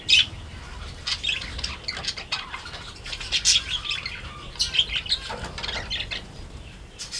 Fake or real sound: real